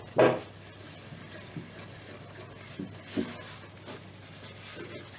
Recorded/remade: recorded